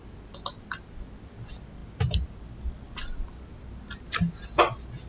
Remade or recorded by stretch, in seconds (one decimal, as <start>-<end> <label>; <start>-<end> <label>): 0.0-5.1 recorded

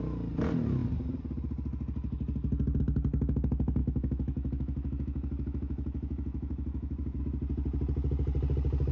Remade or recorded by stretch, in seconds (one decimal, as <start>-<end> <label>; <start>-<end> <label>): 0.0-3.8 recorded; 3.8-7.2 remade; 7.2-8.9 recorded

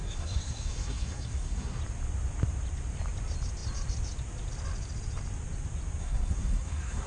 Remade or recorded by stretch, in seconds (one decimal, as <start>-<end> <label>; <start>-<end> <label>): 0.0-1.8 remade; 1.8-6.0 recorded; 6.0-7.1 remade

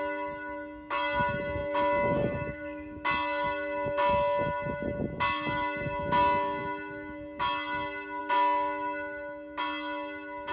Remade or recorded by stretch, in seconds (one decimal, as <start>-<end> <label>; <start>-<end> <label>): 0.0-10.5 recorded

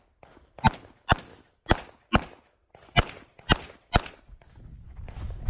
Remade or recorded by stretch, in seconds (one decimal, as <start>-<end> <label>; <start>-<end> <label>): 0.0-5.5 recorded

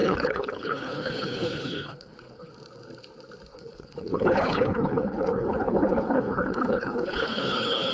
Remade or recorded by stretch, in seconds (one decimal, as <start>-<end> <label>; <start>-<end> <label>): 0.0-2.5 remade; 2.5-3.5 recorded; 3.5-7.9 remade

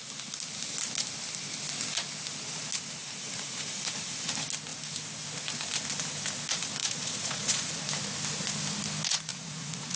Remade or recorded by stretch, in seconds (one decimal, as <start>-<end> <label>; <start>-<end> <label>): 0.0-3.0 recorded; 3.0-4.3 remade; 4.3-6.8 recorded; 6.8-7.8 remade; 7.8-9.3 recorded; 9.3-10.0 remade